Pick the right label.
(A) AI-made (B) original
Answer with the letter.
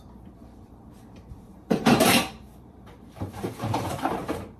A